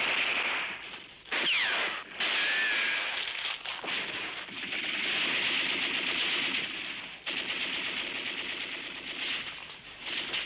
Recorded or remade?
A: recorded